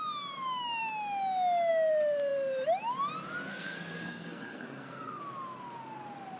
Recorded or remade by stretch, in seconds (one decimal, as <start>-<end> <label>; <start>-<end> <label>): 0.0-3.5 recorded; 3.5-5.2 remade; 5.2-6.4 recorded